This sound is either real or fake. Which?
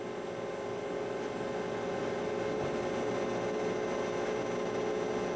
real